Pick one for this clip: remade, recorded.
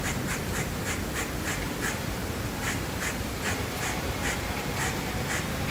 remade